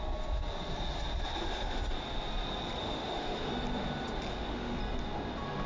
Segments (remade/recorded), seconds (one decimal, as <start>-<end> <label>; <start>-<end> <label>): 0.0-2.8 recorded; 2.8-3.5 remade; 3.5-4.3 recorded; 4.3-4.8 remade; 4.8-5.7 recorded